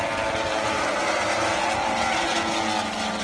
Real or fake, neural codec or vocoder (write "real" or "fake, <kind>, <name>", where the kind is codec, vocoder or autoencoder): real